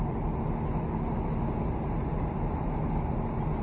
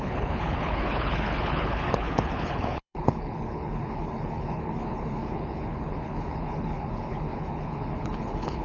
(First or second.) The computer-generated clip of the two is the second